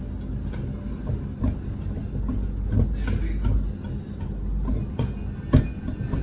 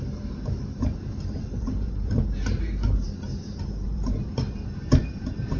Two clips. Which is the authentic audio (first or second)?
first